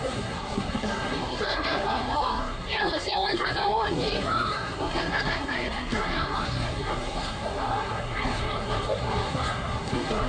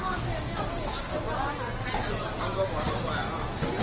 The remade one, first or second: first